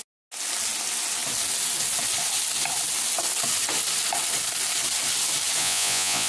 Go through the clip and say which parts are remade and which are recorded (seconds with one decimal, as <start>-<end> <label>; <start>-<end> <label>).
0.0-5.6 recorded; 5.6-6.3 remade